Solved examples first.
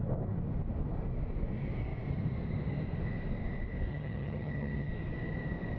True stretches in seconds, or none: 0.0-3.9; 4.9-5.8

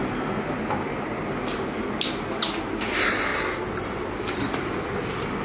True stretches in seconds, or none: 0.0-5.4

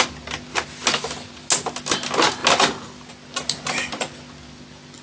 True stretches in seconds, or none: 0.0-5.0

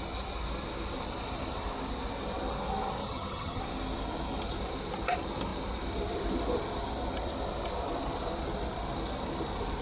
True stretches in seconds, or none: 0.0-3.0; 3.6-9.8

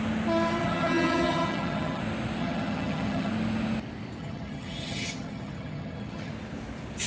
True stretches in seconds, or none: 0.0-0.6; 2.0-2.4; 3.3-4.2; 6.3-7.1